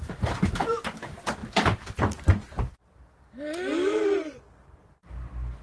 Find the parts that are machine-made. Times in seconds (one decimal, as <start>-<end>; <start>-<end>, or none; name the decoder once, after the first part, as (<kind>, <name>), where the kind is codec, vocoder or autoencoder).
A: none